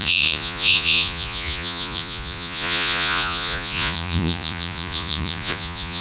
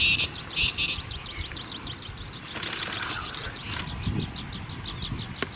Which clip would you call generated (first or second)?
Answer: first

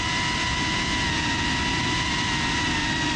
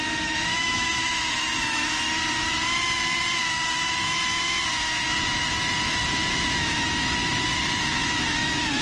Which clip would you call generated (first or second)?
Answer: second